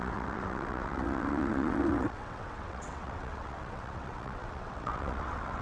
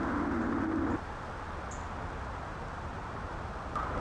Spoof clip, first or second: first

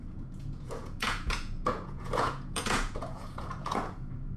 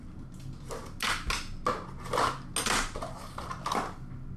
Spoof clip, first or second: first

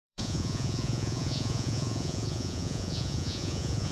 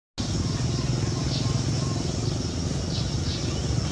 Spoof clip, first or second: first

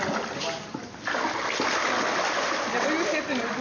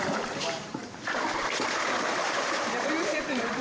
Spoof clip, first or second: second